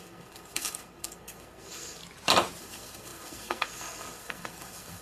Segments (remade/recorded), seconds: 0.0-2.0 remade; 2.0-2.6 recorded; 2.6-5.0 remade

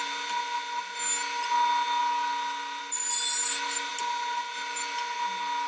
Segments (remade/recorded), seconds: 0.0-5.7 recorded

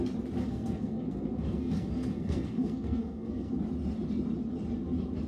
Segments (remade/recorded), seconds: 0.0-0.4 recorded; 0.4-3.5 remade; 3.5-5.3 recorded

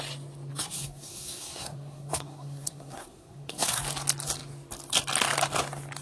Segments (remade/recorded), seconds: 0.0-0.5 recorded; 0.5-3.8 remade; 3.8-6.0 recorded

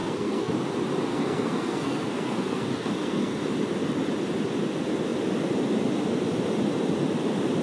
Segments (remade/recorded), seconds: 0.0-0.5 remade; 0.5-1.1 recorded; 1.1-3.4 remade; 3.4-7.6 recorded

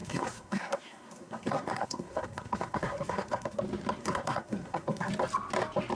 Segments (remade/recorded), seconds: 0.0-3.6 remade; 3.6-4.0 recorded; 4.0-5.1 remade; 5.1-6.0 recorded